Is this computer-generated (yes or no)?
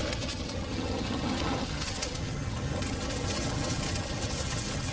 yes